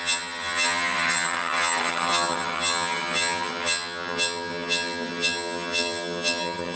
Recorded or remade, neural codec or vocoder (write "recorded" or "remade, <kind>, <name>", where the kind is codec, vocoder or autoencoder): remade, vocoder, HiFi-GAN